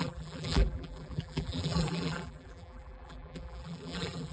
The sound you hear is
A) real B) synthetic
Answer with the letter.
B